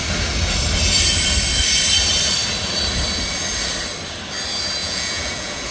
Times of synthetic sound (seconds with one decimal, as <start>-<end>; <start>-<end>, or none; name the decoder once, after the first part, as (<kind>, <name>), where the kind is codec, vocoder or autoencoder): 4.8-5.7 (vocoder, Vocos)